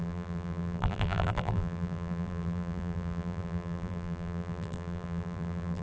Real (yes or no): no